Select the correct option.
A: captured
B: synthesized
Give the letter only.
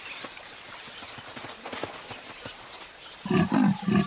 A